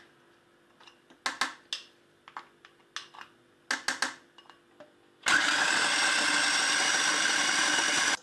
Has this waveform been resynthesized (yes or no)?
no